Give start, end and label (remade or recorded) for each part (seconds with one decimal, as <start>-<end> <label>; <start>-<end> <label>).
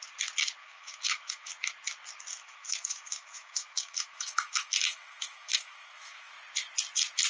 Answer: 0.0-0.6 recorded; 0.6-1.5 remade; 1.5-2.3 recorded; 2.3-6.3 remade; 6.3-7.3 recorded